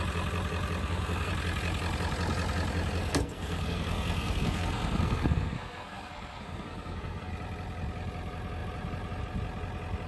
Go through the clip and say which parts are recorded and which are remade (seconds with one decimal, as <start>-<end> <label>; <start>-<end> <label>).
0.0-0.8 recorded; 0.8-1.3 remade; 1.3-3.0 recorded; 3.0-7.3 remade; 7.3-10.1 recorded